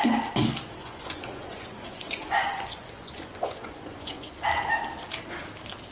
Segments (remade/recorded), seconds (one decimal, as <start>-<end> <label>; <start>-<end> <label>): 0.0-0.8 recorded; 0.8-4.3 remade; 4.3-5.9 recorded